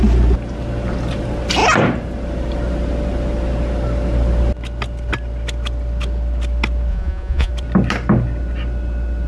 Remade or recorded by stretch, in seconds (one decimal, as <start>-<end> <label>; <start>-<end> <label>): 0.0-6.9 recorded; 6.9-7.5 remade; 7.5-9.3 recorded